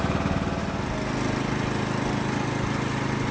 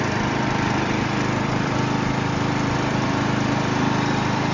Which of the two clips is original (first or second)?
first